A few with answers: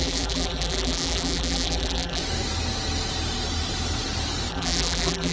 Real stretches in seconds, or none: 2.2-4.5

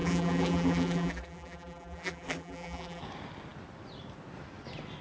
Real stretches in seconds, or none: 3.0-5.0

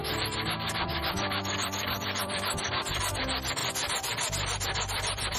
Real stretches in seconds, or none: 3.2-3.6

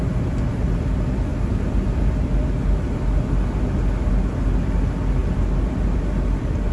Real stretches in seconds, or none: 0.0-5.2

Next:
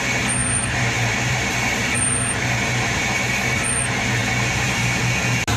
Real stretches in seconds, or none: 0.0-0.4; 3.0-4.2; 5.0-5.6

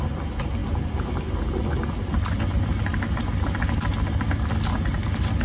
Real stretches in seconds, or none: 0.0-5.4

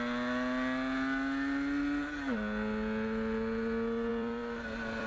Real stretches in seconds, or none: 0.0-4.1